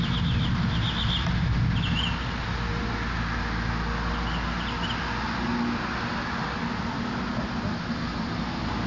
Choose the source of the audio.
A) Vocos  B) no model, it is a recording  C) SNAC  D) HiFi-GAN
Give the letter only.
B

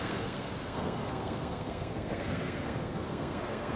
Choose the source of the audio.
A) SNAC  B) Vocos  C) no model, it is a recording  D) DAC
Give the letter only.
A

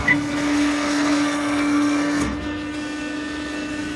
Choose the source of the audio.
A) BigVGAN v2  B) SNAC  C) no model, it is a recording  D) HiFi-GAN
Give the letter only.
B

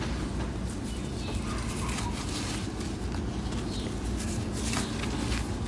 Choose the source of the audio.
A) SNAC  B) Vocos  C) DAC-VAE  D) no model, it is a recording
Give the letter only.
D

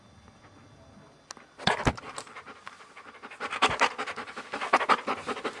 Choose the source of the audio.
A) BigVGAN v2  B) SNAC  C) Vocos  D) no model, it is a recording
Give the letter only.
D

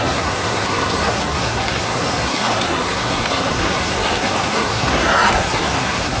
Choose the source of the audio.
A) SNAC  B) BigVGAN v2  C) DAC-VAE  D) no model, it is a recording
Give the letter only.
A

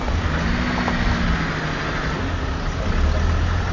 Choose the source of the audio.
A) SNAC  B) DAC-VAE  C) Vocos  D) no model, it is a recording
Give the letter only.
D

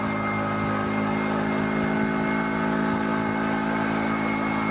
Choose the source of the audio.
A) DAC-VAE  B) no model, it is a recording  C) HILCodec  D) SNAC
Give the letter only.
B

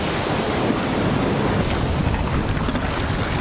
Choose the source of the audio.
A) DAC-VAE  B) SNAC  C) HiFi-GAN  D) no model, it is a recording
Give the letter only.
D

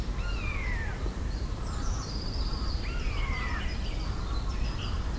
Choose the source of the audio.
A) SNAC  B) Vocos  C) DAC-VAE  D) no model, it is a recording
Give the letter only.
D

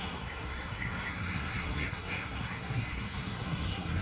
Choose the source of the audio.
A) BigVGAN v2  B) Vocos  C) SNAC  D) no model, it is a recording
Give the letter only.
C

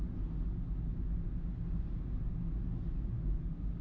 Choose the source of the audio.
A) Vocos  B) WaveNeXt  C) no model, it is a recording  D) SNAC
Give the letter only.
C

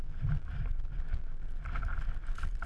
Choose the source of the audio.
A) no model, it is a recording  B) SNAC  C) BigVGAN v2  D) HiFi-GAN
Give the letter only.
A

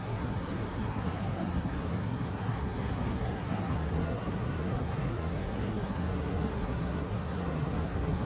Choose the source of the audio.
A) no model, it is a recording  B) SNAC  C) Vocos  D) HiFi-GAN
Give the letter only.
B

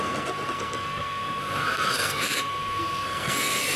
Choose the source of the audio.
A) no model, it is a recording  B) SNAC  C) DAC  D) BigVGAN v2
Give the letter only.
B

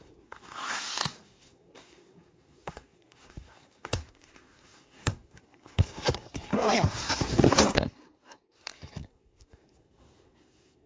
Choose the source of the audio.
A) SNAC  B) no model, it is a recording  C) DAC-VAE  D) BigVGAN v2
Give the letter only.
A